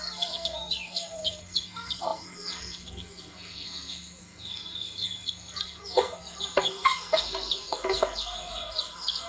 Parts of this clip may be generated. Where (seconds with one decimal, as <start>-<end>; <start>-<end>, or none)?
0.0-9.3